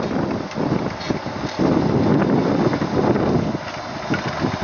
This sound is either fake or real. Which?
real